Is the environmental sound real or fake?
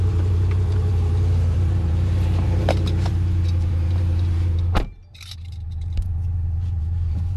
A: fake